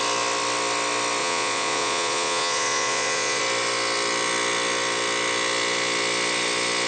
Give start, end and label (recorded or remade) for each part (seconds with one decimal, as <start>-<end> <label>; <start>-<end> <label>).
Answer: 0.0-1.2 recorded; 1.2-3.4 remade; 3.4-6.9 recorded